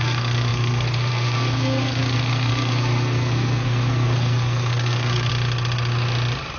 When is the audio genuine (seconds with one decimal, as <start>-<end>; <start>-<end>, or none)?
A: 5.3-6.6